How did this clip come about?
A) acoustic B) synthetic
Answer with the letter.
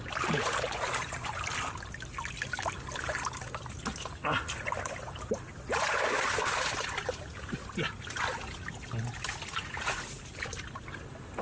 A